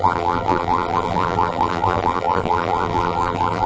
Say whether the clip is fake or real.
fake